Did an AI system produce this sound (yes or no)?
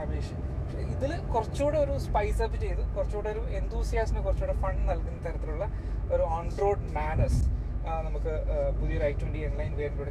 yes